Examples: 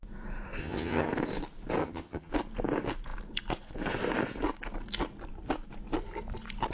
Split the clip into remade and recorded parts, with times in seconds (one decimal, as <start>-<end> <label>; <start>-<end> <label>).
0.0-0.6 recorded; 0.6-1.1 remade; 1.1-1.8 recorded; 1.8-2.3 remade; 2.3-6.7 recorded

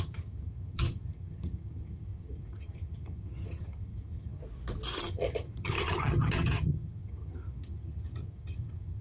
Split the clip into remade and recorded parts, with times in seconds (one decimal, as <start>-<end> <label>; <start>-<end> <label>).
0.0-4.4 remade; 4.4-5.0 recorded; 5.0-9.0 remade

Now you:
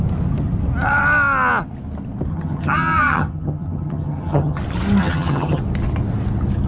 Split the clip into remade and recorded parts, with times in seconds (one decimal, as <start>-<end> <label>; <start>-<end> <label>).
0.0-2.3 recorded; 2.3-4.6 remade; 4.6-5.0 recorded; 5.0-5.6 remade; 5.6-6.7 recorded